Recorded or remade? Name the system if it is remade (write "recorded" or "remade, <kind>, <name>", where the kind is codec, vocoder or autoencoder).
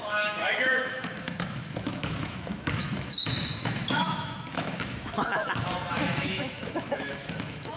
remade, autoencoder, DAC-VAE